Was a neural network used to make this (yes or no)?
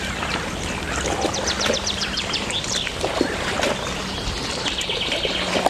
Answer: no